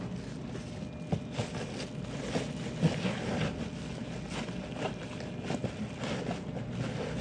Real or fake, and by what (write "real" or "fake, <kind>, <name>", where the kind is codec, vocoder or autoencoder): real